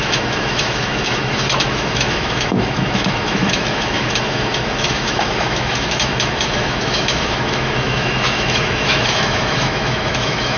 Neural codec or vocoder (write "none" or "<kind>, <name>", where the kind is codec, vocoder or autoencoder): autoencoder, DAC-VAE